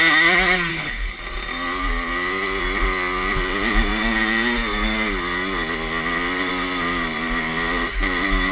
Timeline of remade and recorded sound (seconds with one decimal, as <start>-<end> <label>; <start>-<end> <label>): 0.0-0.7 recorded; 0.7-1.2 remade; 1.2-8.5 recorded